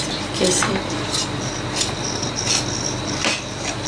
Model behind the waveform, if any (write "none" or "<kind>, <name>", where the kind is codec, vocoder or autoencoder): none